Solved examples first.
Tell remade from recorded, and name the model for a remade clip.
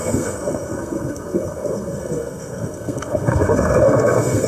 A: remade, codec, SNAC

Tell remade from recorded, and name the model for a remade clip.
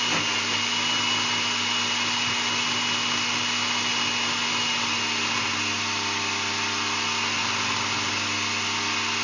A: recorded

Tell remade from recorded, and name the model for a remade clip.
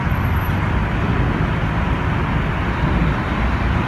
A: recorded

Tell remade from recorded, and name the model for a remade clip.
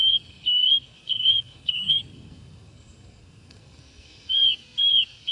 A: remade, codec, SNAC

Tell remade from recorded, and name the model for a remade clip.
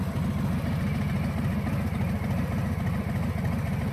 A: recorded